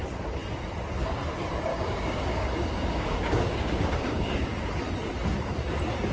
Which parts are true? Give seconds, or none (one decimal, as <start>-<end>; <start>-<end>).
0.0-1.7; 4.7-6.1